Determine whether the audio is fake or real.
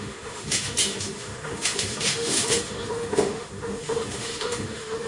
fake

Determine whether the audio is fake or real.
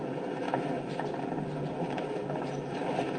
fake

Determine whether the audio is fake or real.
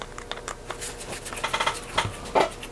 real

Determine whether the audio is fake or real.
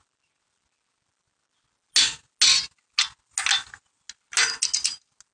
real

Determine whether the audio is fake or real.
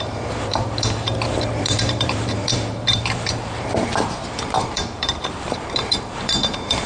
fake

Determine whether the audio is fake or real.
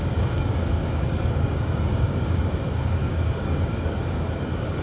fake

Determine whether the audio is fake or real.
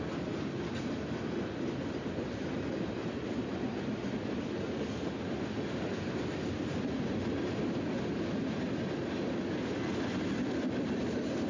fake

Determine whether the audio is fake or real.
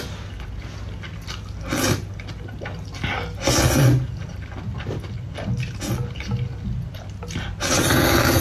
real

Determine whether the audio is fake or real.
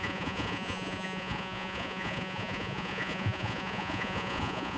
fake